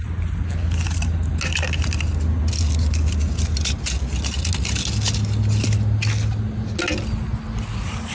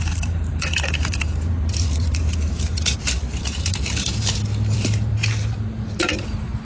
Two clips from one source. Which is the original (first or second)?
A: first